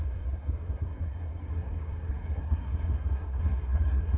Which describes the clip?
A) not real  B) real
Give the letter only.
A